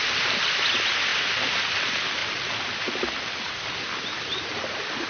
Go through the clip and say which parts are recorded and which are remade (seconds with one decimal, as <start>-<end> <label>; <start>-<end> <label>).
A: 0.0-5.1 recorded